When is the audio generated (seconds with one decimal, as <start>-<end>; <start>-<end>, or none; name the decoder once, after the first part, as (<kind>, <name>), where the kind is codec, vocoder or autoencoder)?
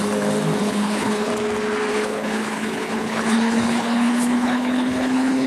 0.6-1.3 (codec, HILCodec); 1.9-5.5